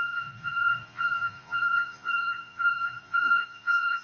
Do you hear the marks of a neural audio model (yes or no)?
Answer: yes